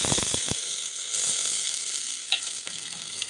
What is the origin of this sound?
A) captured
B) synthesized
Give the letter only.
B